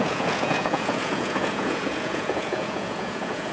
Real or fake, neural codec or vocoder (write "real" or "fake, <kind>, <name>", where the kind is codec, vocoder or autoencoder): fake, vocoder, Vocos